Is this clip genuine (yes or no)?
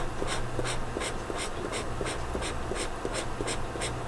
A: yes